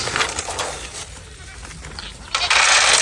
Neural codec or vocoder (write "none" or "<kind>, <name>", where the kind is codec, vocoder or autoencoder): none